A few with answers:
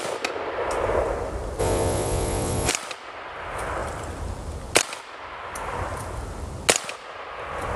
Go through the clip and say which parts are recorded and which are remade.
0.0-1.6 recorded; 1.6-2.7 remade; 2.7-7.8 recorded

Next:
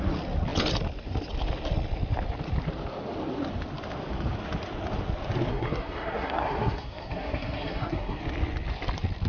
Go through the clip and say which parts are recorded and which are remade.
0.0-5.5 recorded; 5.5-8.2 remade; 8.2-9.3 recorded